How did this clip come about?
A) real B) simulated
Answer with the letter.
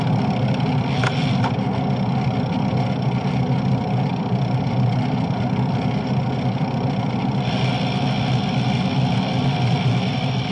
A